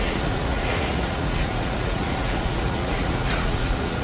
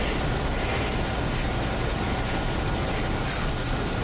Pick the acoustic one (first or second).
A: second